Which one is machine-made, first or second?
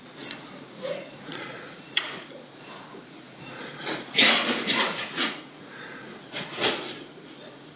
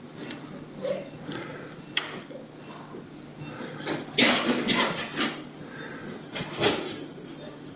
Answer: first